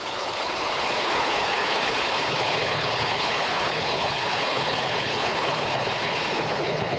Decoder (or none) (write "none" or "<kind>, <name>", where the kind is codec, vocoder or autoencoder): codec, HILCodec